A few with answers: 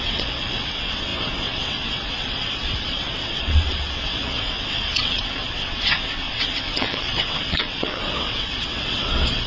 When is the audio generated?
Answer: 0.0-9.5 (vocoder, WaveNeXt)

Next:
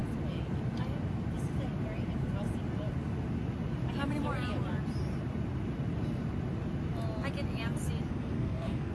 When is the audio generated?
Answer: 8.1-8.9 (codec, SNAC)

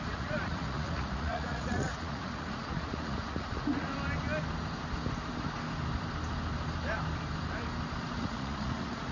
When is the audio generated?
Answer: 0.0-3.9 (vocoder, Vocos); 8.0-9.1

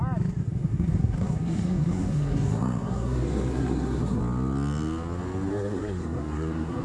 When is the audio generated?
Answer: 0.4-4.2 (codec, SNAC); 5.5-6.8

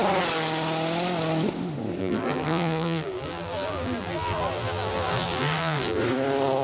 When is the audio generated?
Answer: 2.0-6.0 (vocoder, BigVGAN v2)

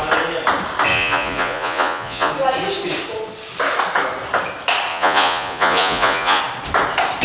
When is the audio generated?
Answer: 0.9-2.3 (vocoder, Vocos); 4.9-6.4

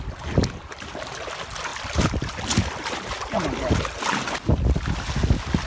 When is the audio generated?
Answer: none

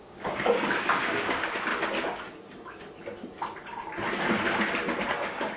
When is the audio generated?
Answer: 0.0-1.7 (codec, DAC); 5.1-5.6